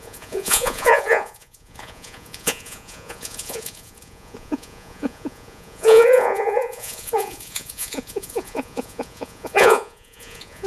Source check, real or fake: fake